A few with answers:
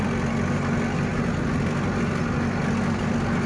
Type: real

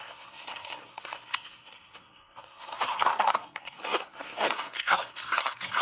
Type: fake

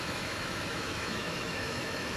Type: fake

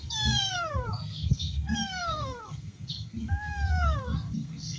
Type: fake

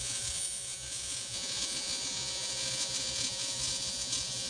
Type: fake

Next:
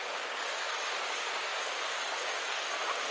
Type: fake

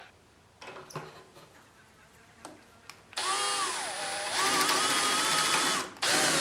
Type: real